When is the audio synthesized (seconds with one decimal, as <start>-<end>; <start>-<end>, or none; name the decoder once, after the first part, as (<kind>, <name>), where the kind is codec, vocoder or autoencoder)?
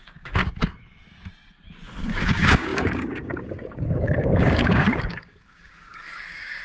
0.0-0.4 (codec, DAC); 2.0-6.6